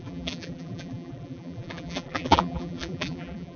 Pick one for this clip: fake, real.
fake